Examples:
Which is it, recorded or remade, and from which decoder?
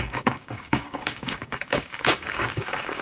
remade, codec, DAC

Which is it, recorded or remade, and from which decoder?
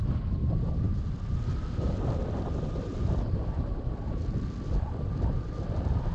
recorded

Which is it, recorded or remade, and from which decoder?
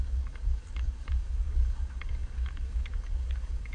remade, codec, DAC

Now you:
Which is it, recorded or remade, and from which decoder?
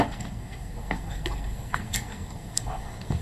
remade, codec, SNAC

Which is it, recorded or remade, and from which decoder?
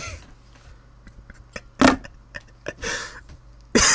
recorded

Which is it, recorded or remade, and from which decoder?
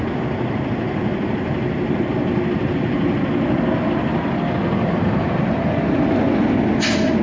recorded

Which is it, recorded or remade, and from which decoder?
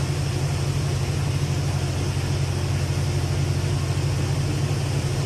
recorded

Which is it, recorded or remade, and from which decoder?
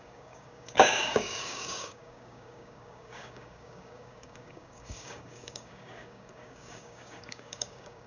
remade, codec, DAC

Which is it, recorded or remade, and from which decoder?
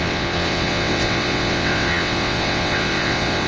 remade, vocoder, WaveNeXt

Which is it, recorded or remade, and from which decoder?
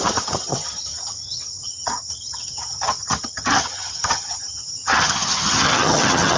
remade, vocoder, HiFi-GAN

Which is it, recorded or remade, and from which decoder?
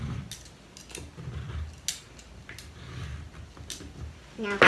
recorded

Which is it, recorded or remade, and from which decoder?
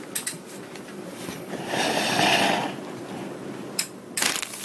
remade, vocoder, BigVGAN v2